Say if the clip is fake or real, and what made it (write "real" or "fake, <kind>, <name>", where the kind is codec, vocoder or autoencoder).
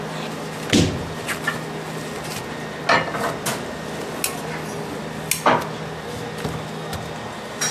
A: real